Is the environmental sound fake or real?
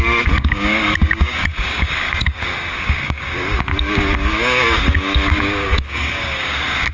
fake